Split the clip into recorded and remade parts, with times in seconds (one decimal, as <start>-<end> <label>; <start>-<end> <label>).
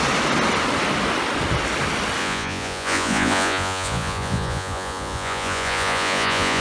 0.0-2.2 recorded; 2.2-6.6 remade